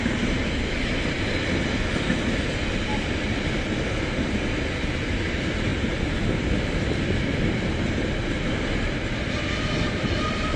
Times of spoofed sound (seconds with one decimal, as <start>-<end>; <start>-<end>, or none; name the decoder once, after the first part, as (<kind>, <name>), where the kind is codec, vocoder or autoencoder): 5.7-6.2 (vocoder, BigVGAN v2)